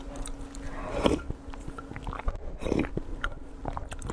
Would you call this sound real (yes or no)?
yes